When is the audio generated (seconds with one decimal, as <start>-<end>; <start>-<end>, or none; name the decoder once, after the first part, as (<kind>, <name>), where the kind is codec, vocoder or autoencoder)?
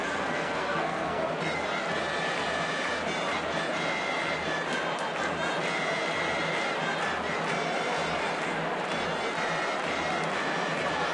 0.0-1.3 (codec, SNAC)